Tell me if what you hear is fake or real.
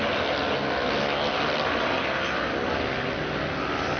real